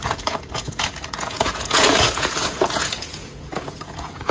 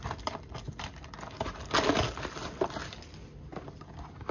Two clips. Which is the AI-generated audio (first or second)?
first